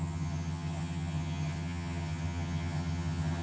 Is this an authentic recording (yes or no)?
no